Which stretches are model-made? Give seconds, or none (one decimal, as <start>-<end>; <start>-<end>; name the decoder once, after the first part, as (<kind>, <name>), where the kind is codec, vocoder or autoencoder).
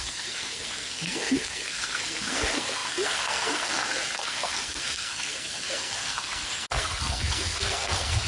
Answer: 0.0-8.3 (codec, SNAC)